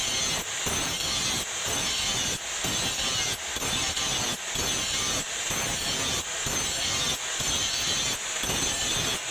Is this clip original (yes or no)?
yes